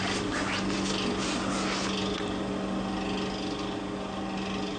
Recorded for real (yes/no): yes